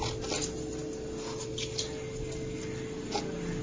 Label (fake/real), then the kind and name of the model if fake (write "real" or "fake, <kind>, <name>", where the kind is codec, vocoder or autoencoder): real